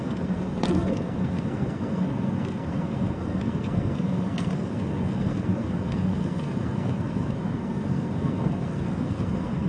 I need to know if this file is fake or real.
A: fake